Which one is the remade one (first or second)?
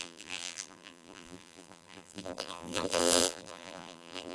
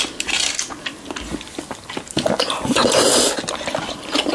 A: first